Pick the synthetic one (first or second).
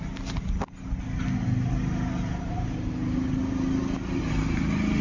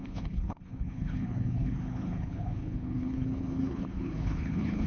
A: second